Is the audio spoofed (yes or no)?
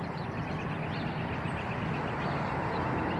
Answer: no